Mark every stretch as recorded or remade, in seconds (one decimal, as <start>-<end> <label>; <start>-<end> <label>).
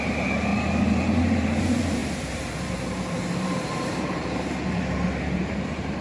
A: 0.0-6.0 remade